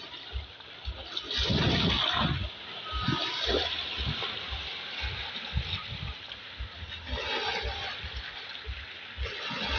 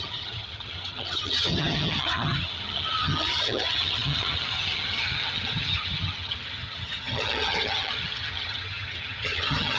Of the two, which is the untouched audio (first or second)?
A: first